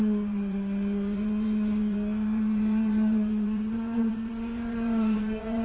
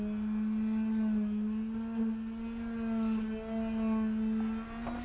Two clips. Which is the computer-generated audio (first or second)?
first